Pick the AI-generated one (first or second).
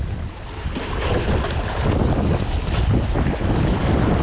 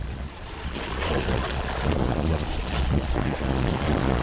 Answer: second